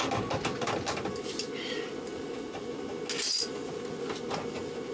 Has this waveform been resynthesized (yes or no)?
no